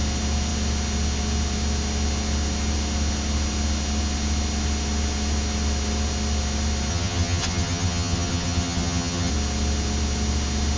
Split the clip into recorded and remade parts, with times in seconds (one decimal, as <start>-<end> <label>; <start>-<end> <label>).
0.0-6.9 recorded; 6.9-9.3 remade; 9.3-10.8 recorded